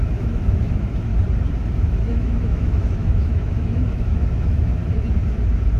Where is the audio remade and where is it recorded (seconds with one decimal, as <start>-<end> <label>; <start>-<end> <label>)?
0.0-1.1 remade; 1.1-1.7 recorded; 1.7-4.8 remade; 4.8-5.8 recorded